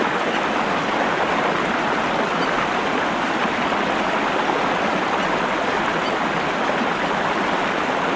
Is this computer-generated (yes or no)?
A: no